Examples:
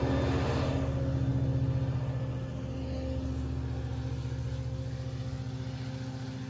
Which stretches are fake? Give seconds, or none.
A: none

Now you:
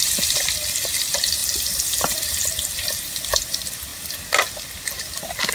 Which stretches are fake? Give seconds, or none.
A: 0.0-3.9 (vocoder, BigVGAN v2); 5.1-5.5

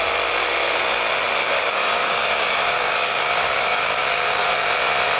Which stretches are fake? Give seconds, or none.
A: 1.4-4.5 (codec, DAC)

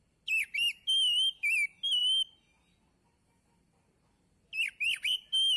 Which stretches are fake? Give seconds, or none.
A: none